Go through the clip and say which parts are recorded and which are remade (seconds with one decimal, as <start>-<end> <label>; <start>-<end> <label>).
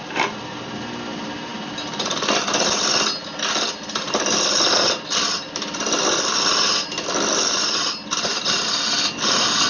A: 0.0-9.7 recorded